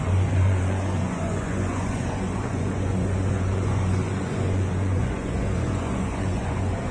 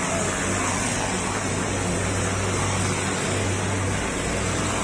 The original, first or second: second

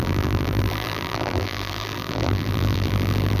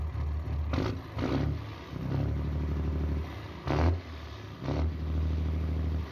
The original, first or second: second